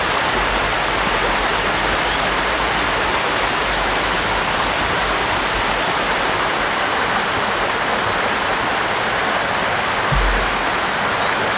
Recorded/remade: recorded